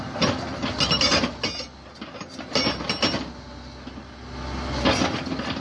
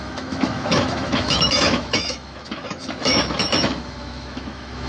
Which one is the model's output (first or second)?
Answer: second